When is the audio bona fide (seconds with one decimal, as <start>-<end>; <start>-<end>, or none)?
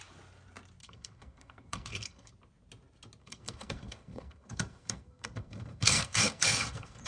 0.0-0.8; 2.3-3.2